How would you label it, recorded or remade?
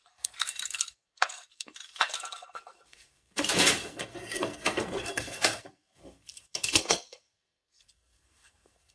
remade